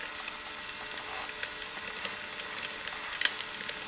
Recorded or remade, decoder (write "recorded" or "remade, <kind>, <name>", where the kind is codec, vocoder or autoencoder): recorded